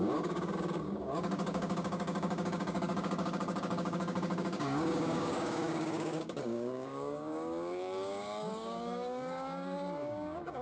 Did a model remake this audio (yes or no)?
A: yes